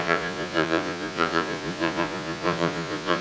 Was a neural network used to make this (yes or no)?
yes